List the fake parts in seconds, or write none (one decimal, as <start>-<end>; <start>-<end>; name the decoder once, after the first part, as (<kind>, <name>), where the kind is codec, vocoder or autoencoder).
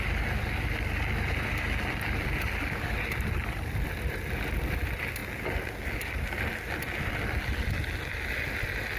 none